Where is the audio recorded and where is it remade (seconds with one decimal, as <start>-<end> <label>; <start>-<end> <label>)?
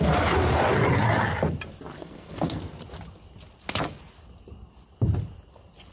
0.0-2.0 recorded; 2.0-2.6 remade; 2.6-5.9 recorded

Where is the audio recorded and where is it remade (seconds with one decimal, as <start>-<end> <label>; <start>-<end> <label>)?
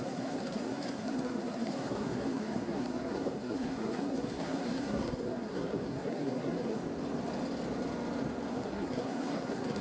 0.0-6.8 remade; 6.8-8.5 recorded; 8.5-9.8 remade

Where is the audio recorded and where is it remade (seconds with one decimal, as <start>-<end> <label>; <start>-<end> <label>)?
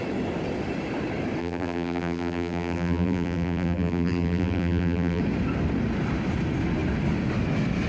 0.0-1.4 recorded; 1.4-5.2 remade; 5.2-7.9 recorded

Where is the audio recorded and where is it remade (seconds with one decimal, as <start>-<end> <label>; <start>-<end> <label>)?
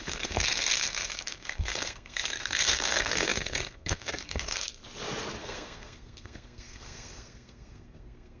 0.0-4.8 remade; 4.8-5.4 recorded; 5.4-8.4 remade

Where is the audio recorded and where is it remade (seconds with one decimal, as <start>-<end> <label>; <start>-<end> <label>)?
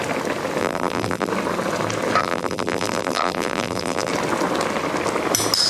0.0-0.6 recorded; 0.6-1.3 remade; 1.3-2.2 recorded; 2.2-4.1 remade; 4.1-5.7 recorded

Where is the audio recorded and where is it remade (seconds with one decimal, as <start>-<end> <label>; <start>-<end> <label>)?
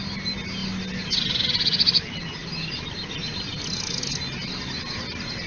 0.0-5.5 recorded